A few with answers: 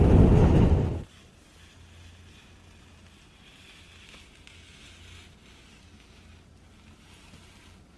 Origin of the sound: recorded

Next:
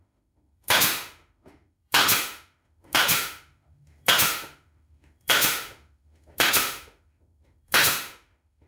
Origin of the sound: remade